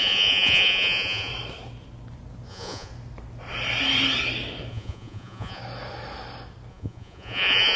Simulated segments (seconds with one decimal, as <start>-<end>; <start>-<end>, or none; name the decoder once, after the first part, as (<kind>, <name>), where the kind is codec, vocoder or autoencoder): 0.0-1.3 (vocoder, Vocos); 2.5-2.9; 4.7-5.6; 6.7-7.8